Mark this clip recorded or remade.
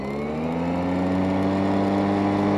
recorded